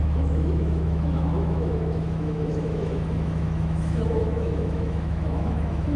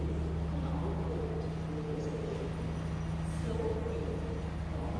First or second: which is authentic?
second